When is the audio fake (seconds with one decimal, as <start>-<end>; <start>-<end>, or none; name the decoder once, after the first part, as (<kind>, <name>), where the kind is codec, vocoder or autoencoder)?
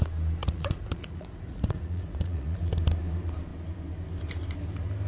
0.4-2.7 (vocoder, Vocos)